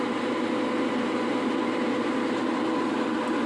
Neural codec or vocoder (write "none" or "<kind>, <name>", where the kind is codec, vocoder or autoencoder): none